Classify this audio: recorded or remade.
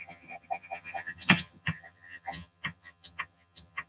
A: remade